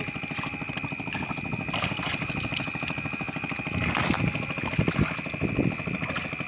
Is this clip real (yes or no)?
yes